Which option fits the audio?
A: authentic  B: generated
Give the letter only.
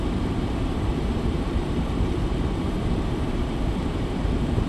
B